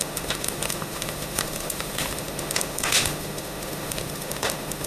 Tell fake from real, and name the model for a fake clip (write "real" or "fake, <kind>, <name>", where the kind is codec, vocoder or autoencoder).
fake, autoencoder, DAC-VAE